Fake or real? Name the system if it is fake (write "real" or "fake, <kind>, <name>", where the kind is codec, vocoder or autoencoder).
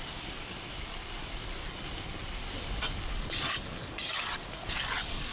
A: real